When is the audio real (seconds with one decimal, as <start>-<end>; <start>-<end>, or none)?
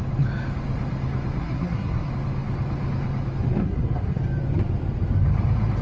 0.0-1.4; 2.1-3.6; 4.2-5.8